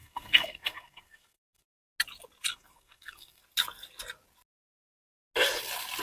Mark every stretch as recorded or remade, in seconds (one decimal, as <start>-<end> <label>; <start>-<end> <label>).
0.0-1.7 remade; 1.7-2.5 recorded; 2.5-3.4 remade; 3.4-6.0 recorded